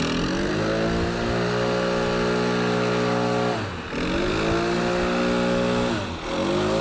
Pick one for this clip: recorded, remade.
recorded